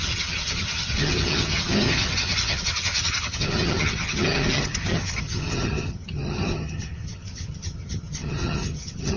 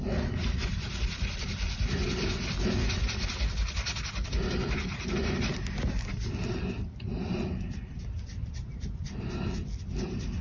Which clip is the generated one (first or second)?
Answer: first